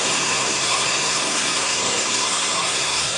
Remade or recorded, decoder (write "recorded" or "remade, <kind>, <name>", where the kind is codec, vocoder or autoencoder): remade, codec, SNAC